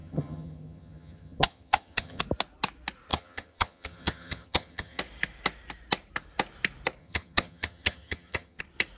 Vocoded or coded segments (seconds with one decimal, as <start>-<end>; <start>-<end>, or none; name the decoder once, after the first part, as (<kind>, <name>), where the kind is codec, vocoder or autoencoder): 0.0-2.2 (vocoder, HiFi-GAN); 3.1-5.0; 7.0-8.6